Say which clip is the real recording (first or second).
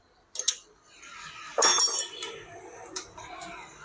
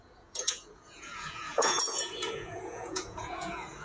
first